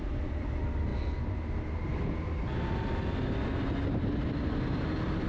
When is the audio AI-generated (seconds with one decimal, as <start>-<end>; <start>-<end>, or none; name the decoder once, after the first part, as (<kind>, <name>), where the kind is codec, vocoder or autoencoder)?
0.0-0.9 (vocoder, BigVGAN v2); 4.1-5.3